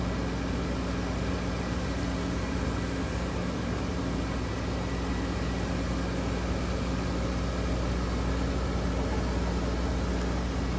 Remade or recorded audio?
recorded